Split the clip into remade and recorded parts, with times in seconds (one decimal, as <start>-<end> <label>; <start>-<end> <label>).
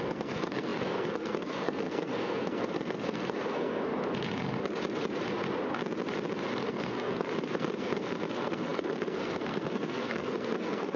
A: 0.0-3.9 remade; 3.9-6.7 recorded; 6.7-11.0 remade